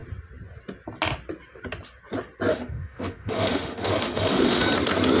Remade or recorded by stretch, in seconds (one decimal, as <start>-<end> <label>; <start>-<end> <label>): 0.0-2.5 recorded; 2.5-4.6 remade; 4.6-5.2 recorded